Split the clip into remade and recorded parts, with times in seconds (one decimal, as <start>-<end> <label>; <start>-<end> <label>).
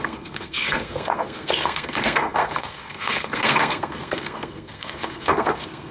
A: 0.0-5.9 remade